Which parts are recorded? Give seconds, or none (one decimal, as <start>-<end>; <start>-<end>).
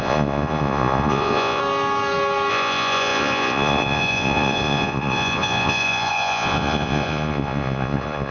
1.6-2.5